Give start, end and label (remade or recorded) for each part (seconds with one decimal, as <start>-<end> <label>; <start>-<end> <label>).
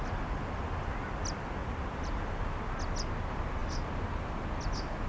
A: 0.0-1.6 recorded; 1.6-2.2 remade; 2.2-5.1 recorded